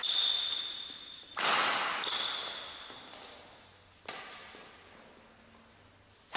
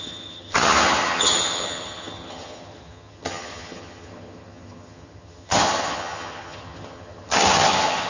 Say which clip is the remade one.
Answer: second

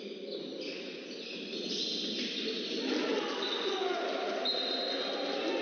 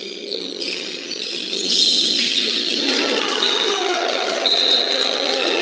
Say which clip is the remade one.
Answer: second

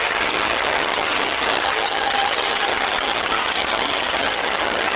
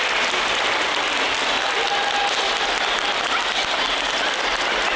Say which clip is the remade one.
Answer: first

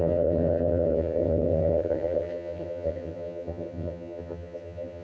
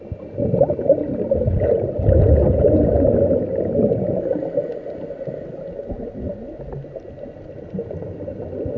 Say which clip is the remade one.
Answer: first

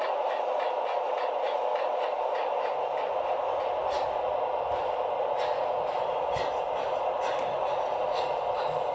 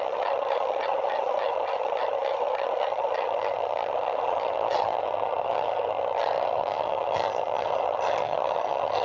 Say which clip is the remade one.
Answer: second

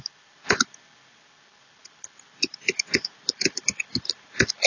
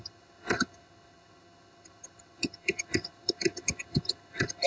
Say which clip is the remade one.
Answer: second